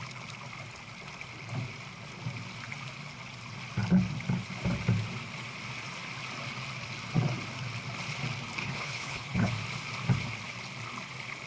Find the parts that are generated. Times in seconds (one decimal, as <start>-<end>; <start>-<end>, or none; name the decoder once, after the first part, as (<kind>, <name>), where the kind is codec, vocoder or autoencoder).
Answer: 8.6-9.5 (codec, HILCodec)